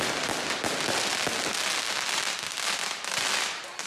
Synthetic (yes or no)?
no